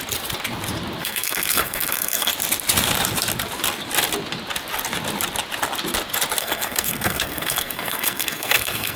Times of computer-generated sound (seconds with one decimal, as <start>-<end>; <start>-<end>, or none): 1.0-2.3; 6.4-9.0